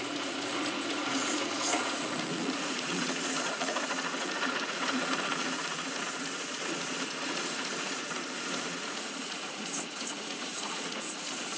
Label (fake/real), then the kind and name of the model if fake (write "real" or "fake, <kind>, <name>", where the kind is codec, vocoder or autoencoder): fake, vocoder, Vocos